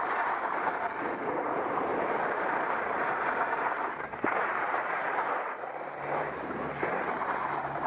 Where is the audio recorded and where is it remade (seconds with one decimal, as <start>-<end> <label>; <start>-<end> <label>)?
0.0-1.9 remade; 1.9-2.8 recorded; 2.8-7.9 remade